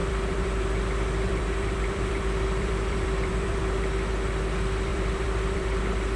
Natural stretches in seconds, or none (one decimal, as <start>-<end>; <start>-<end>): 3.6-4.9; 5.8-6.2